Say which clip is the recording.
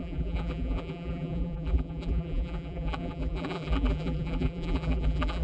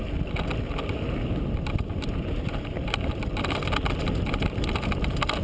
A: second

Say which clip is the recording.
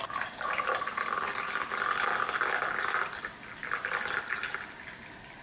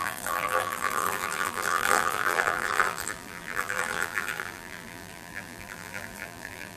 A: first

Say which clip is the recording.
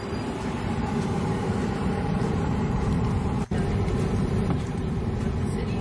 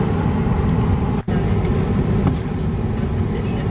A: second